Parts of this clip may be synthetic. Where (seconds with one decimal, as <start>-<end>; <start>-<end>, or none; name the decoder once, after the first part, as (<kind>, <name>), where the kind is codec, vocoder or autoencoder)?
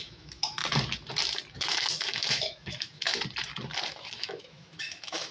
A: 0.0-0.6 (autoencoder, DAC-VAE); 1.5-3.1; 3.9-5.3